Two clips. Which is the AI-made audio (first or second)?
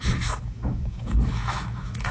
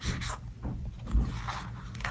first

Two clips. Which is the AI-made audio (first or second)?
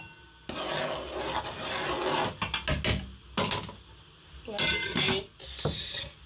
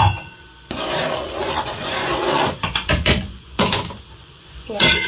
second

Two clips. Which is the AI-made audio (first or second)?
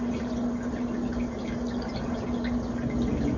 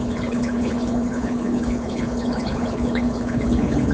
second